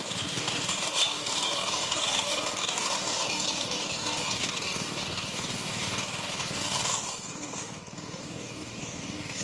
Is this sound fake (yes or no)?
yes